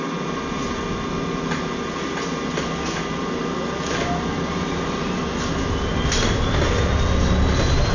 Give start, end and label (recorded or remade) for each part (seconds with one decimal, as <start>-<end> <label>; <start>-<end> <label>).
0.0-7.9 recorded